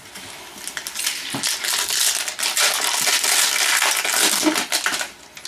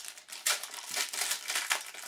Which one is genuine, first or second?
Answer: first